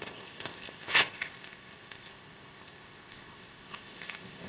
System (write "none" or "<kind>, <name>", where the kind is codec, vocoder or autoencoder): codec, ZipCodec